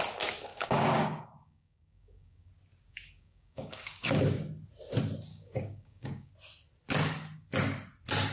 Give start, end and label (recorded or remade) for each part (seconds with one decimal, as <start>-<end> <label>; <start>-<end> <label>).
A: 0.0-0.5 recorded; 0.5-2.5 remade; 2.5-2.9 recorded; 2.9-4.2 remade; 4.2-5.3 recorded; 5.3-6.3 remade; 6.3-8.3 recorded